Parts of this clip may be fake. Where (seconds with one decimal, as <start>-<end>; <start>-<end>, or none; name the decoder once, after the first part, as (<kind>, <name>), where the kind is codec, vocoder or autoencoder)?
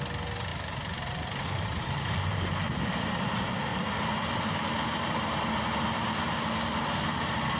0.5-3.2 (vocoder, BigVGAN v2)